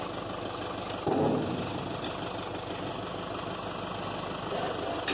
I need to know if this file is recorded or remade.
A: recorded